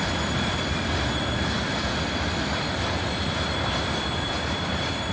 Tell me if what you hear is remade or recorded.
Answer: remade